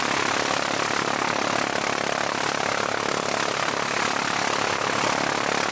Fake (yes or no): no